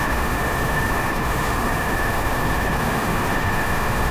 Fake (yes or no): yes